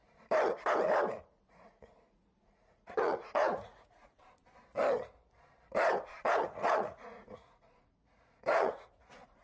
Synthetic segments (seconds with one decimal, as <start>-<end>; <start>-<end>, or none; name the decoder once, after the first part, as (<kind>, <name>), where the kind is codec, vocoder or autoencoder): 1.5-4.2 (vocoder, Vocos); 6.2-9.4